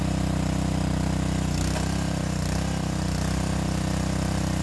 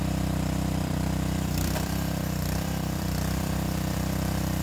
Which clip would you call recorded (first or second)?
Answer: first